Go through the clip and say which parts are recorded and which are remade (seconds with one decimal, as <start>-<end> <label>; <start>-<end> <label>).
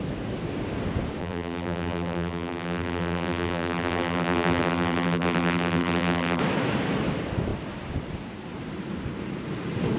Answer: 0.0-1.2 recorded; 1.2-6.4 remade; 6.4-10.0 recorded